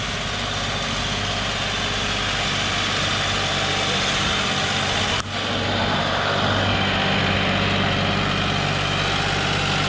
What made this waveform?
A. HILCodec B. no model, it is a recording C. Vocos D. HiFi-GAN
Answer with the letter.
B